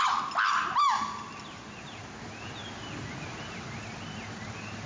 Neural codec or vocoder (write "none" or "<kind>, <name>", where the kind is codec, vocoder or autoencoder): none